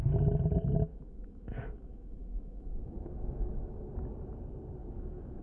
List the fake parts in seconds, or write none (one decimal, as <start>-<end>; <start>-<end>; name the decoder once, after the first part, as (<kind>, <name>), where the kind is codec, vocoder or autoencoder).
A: 0.9-3.9 (autoencoder, DAC-VAE); 4.8-5.4